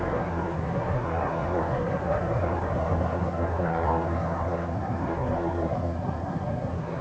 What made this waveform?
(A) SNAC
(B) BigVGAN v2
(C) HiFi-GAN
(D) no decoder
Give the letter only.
A